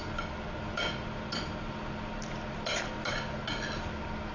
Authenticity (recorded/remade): recorded